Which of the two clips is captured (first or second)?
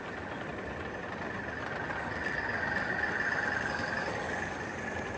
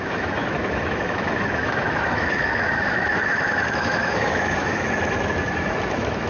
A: first